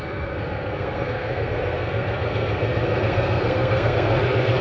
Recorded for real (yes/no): no